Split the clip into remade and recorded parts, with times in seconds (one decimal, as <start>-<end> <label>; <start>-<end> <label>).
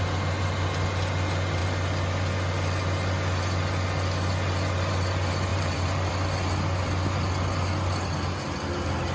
0.0-5.5 recorded; 5.5-6.1 remade; 6.1-9.1 recorded